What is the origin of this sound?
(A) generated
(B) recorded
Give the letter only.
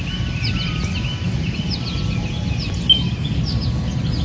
B